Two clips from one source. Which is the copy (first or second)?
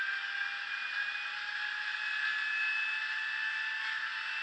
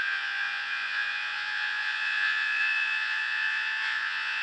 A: second